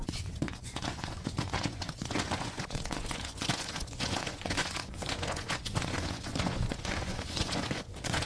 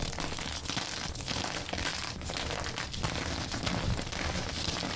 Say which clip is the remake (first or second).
first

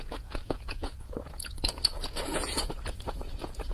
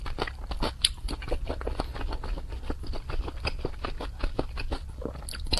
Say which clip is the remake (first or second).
first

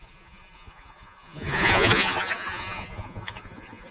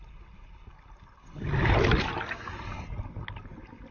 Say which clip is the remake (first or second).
first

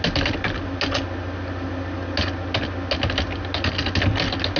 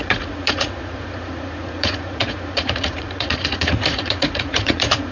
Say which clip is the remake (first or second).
second